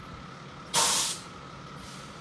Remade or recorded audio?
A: recorded